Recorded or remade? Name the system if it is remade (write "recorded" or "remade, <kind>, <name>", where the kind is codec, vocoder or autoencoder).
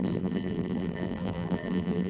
remade, vocoder, BigVGAN v2